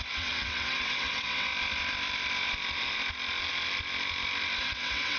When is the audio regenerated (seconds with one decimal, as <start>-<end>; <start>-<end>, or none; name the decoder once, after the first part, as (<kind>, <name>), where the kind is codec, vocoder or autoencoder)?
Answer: 0.0-1.5 (vocoder, WaveNeXt); 4.6-5.2